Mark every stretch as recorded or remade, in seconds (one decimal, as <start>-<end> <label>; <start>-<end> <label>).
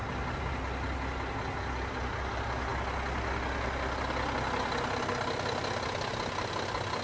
0.0-7.0 recorded